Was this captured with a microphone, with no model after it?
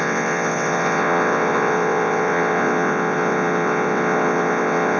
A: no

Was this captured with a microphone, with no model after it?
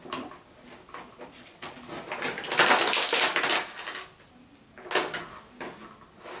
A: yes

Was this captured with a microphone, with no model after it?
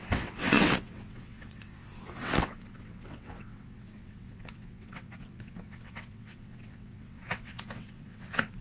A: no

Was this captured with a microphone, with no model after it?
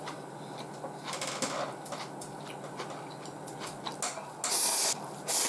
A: yes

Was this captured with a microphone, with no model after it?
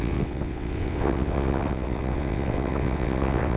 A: no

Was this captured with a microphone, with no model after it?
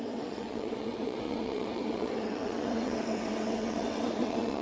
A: no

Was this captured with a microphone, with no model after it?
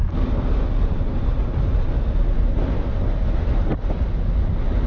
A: yes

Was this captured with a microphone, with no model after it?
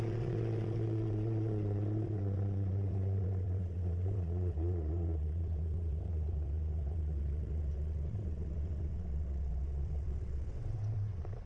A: no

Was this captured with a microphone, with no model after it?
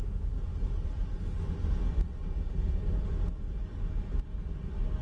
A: yes